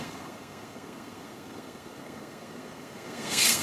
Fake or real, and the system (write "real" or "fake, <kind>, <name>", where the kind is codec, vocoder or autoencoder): fake, codec, SNAC